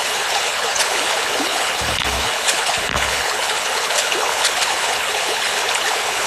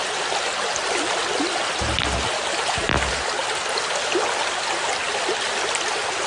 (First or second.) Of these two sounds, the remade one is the first